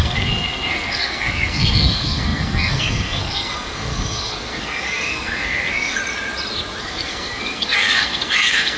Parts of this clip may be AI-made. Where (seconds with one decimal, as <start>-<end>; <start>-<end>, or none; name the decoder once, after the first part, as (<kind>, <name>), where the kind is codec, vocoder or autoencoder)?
0.0-6.0 (codec, SNAC); 6.8-8.8